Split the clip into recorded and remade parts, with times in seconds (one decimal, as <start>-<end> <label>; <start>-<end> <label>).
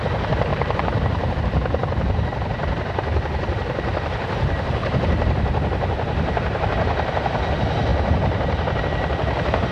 0.0-0.5 recorded; 0.5-1.4 remade; 1.4-3.9 recorded; 3.9-6.6 remade; 6.6-9.7 recorded